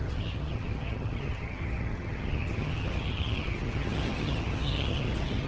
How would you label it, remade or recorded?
remade